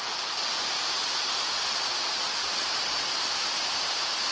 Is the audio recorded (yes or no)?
yes